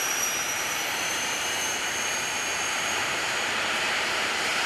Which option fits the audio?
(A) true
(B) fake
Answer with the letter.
B